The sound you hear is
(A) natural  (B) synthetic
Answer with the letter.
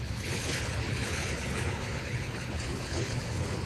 B